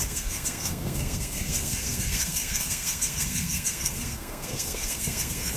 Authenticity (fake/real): fake